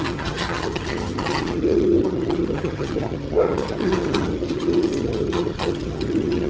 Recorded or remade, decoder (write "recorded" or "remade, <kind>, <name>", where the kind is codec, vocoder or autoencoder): remade, vocoder, HiFi-GAN